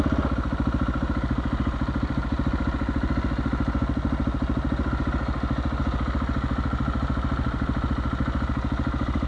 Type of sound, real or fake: real